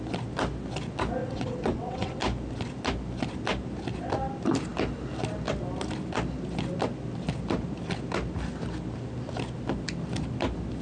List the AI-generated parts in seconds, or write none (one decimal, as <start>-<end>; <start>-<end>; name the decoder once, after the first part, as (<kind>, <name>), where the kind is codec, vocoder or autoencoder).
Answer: 1.2-2.2 (vocoder, WaveNeXt)